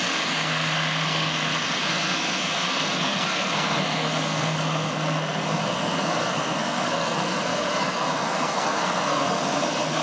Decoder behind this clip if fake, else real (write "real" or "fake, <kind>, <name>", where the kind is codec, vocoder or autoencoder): fake, codec, SNAC